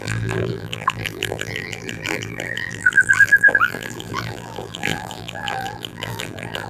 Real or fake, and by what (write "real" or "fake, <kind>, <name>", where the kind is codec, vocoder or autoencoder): fake, vocoder, BigVGAN v2